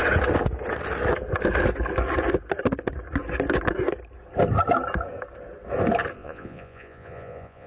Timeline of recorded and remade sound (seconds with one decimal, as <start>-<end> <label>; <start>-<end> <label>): 0.0-6.2 recorded; 6.2-7.7 remade